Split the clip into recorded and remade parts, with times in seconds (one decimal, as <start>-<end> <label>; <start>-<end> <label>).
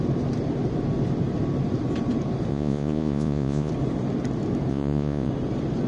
0.0-2.5 recorded; 2.5-3.7 remade; 3.7-4.7 recorded; 4.7-5.3 remade; 5.3-5.9 recorded